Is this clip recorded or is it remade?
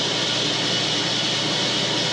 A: recorded